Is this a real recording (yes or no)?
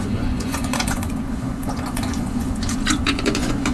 no